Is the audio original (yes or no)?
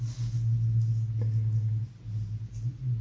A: yes